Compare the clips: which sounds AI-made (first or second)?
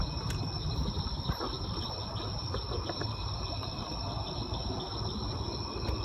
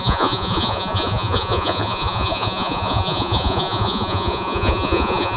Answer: second